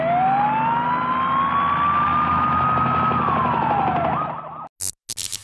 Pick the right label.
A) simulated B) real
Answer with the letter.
B